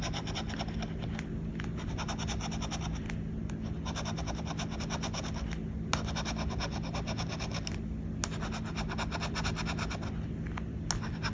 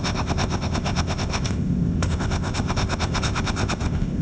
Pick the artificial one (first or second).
second